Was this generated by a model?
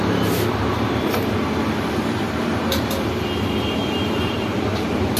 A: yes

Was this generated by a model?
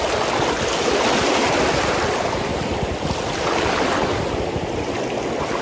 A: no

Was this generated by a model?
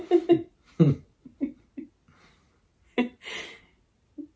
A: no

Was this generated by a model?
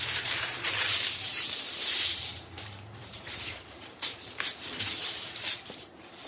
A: yes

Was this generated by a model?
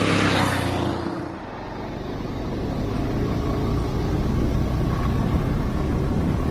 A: no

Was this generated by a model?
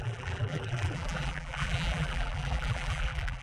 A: yes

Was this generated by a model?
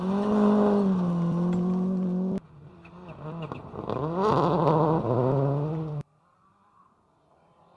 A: no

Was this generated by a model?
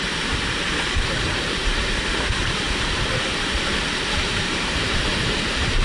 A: yes